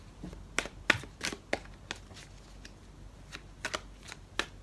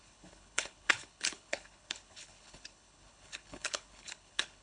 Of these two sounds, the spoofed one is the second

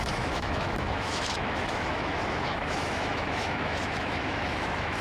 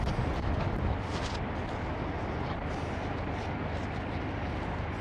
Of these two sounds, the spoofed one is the first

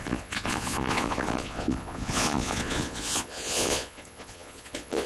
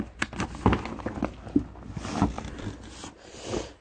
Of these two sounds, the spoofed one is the first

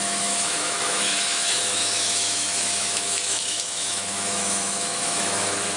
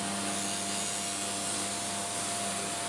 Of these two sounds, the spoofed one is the first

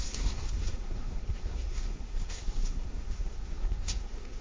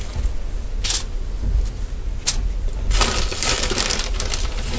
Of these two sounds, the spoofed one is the first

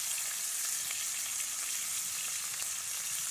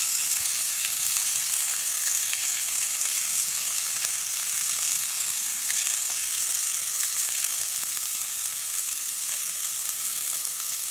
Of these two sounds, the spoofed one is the second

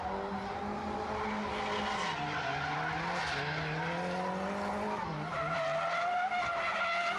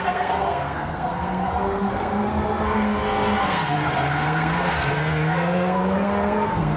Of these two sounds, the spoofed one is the second